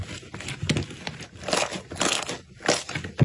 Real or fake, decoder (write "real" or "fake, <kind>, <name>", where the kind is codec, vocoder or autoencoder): real